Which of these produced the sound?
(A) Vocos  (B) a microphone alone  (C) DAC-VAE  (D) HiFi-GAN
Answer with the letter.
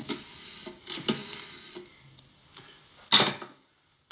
B